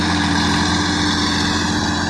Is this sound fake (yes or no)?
no